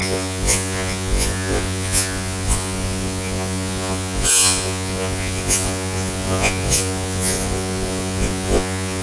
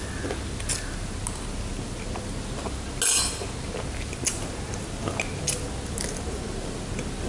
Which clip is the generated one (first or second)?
first